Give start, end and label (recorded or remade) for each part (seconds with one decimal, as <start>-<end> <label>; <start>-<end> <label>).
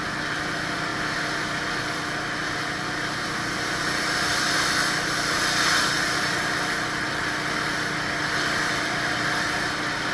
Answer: 0.0-10.1 recorded